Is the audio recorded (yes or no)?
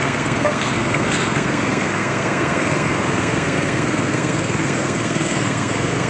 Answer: no